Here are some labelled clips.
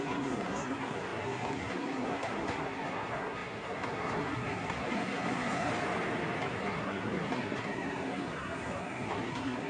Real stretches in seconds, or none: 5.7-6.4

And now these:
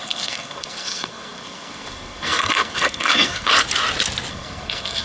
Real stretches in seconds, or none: 3.5-4.3

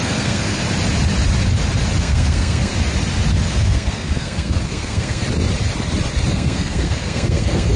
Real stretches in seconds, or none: 0.6-2.0; 2.7-3.5; 5.2-6.3